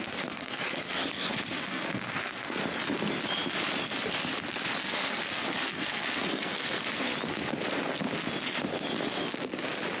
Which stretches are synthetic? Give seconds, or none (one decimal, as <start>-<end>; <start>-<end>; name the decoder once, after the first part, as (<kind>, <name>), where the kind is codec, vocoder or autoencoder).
0.0-2.6 (codec, SNAC); 4.9-7.1